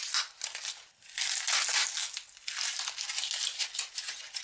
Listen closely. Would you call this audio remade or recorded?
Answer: recorded